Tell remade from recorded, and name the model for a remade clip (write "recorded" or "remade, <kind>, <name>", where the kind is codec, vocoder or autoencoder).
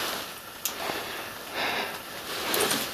recorded